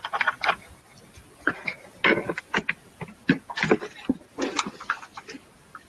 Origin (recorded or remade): recorded